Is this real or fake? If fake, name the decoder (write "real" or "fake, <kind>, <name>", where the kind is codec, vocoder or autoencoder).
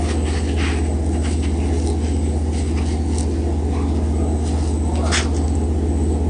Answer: real